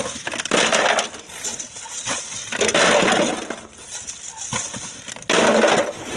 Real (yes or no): yes